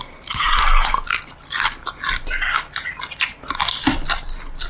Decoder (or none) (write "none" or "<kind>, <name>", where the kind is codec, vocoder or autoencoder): none